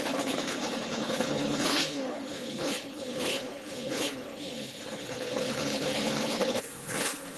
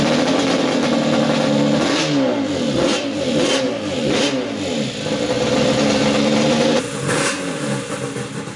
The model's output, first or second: first